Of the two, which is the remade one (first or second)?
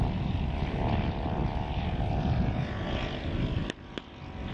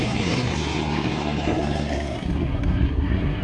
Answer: second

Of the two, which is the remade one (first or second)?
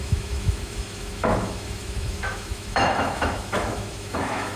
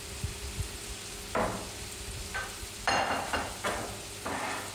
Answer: first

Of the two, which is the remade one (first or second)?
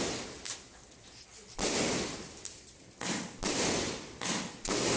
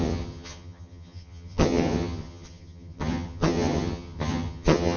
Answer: second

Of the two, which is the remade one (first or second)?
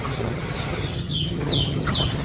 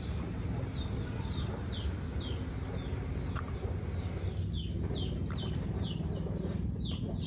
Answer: first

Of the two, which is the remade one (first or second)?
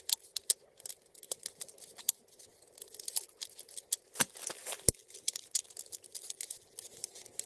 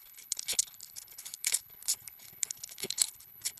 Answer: second